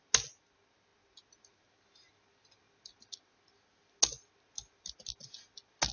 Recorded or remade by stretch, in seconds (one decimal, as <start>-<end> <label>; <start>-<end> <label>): 0.0-5.9 recorded